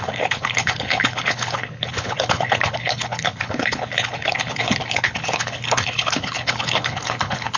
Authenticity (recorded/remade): remade